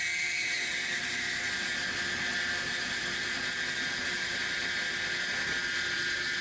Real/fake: real